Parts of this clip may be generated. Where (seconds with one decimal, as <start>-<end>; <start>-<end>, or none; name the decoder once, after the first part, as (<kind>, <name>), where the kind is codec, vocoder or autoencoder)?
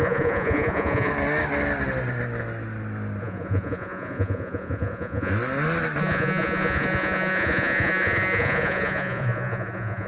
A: 0.0-1.1 (vocoder, Vocos); 3.2-5.3; 6.0-10.1